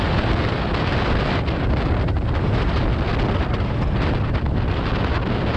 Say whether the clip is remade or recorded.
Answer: recorded